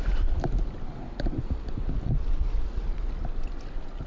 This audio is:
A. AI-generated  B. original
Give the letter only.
A